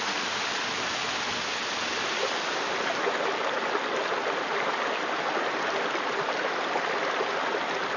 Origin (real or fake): real